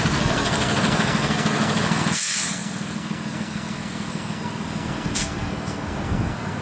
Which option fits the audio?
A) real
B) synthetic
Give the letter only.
B